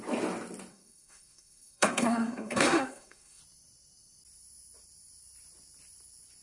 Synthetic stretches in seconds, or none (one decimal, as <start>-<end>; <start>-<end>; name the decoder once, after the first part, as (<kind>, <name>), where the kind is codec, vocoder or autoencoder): 0.7-3.4 (codec, SNAC)